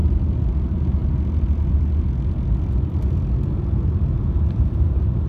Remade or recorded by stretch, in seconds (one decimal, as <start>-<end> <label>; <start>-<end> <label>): 0.0-0.5 recorded; 0.5-1.0 remade; 1.0-4.2 recorded; 4.2-5.3 remade